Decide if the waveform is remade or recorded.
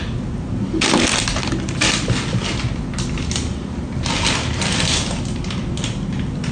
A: recorded